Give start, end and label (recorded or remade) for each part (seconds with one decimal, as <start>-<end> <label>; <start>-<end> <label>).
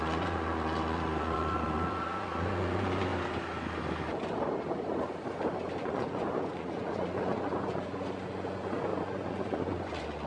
0.0-3.1 remade; 3.1-5.8 recorded; 5.8-10.3 remade